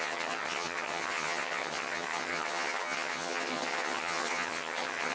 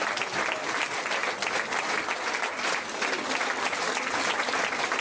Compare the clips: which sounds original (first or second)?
second